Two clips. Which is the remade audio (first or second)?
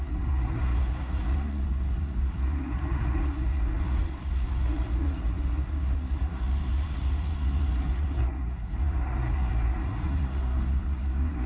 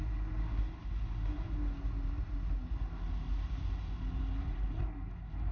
first